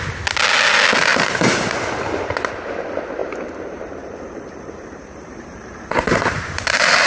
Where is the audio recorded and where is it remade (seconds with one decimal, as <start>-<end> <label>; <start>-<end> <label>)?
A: 0.0-1.1 recorded; 1.1-1.6 remade; 1.6-3.2 recorded; 3.2-7.1 remade